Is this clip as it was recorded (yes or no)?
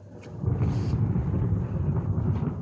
no